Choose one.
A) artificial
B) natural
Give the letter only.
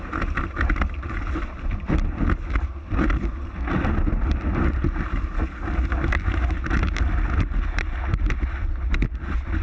B